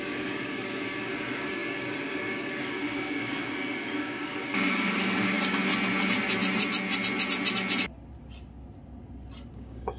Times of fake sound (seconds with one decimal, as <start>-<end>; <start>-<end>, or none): 0.0-5.7; 9.5-10.0